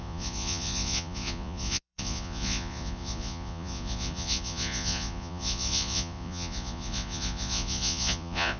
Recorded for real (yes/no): no